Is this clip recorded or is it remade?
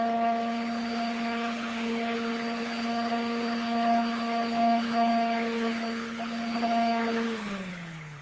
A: remade